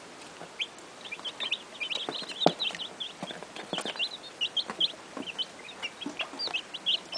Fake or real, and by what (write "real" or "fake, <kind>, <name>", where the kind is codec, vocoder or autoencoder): real